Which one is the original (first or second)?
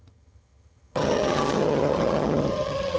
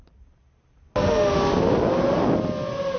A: second